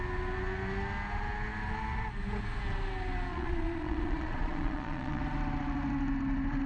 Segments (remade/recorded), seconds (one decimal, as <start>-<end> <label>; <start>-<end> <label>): 0.0-3.3 recorded; 3.3-5.2 remade; 5.2-6.7 recorded

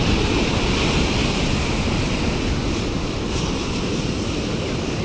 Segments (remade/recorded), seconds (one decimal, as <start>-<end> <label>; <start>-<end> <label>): 0.0-5.0 recorded

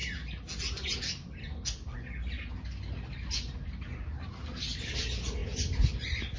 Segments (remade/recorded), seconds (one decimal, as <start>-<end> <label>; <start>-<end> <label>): 0.0-6.4 recorded

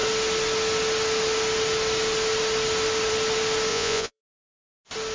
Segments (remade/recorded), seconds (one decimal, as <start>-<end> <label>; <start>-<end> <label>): 0.0-3.7 recorded; 3.7-4.2 remade; 4.2-5.1 recorded